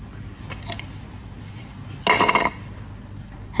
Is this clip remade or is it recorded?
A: recorded